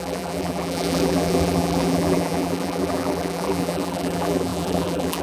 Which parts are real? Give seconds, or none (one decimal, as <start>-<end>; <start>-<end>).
none